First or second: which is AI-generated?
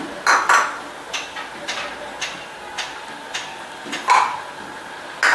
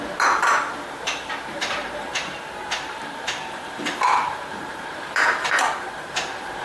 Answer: second